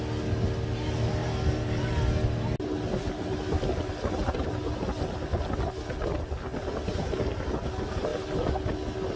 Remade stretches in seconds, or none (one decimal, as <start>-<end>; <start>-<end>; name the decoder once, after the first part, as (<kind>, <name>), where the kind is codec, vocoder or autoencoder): 1.2-2.0 (vocoder, BigVGAN v2)